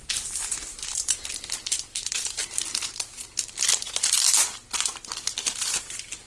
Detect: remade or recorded remade